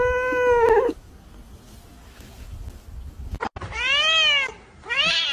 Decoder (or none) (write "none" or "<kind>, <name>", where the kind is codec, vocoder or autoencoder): none